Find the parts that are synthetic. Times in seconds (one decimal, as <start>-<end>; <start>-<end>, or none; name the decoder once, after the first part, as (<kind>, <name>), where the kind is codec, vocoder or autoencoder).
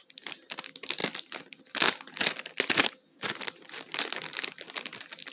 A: none